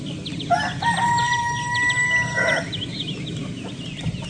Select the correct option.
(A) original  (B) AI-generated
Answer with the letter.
A